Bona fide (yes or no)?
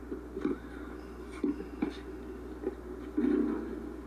yes